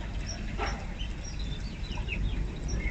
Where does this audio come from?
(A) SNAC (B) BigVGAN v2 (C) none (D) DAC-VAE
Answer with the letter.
C